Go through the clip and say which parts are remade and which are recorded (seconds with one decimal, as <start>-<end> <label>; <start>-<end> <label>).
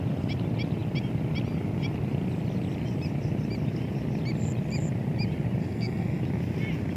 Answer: 0.0-5.6 recorded; 5.6-6.2 remade; 6.2-7.0 recorded